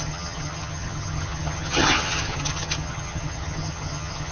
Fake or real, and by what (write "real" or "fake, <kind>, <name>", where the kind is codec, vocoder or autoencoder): fake, vocoder, HiFi-GAN